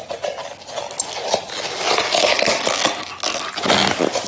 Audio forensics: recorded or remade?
recorded